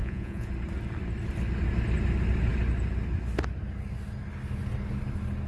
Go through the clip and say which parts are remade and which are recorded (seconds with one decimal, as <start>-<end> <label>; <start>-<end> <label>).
0.0-0.5 remade; 0.5-5.5 recorded